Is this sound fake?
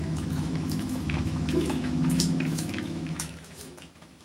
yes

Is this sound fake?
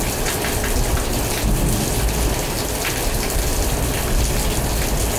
no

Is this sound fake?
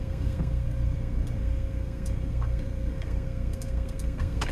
yes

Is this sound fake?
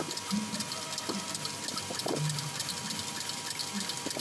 no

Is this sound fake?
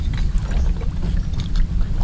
no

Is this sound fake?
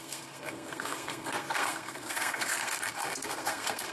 yes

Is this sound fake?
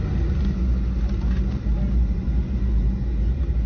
no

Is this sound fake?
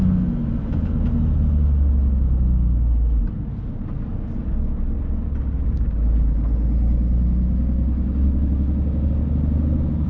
no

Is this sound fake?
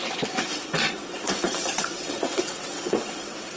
yes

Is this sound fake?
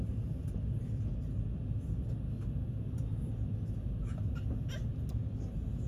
no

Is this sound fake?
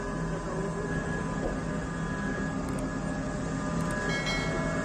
no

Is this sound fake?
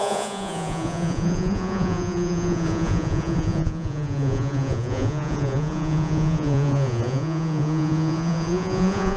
yes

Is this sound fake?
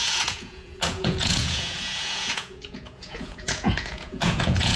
yes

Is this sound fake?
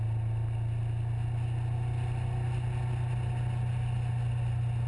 no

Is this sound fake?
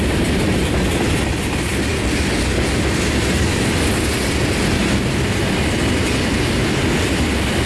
no